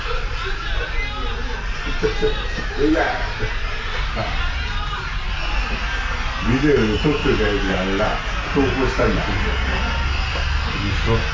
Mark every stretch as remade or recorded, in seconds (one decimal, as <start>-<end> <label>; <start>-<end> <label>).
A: 0.0-11.3 recorded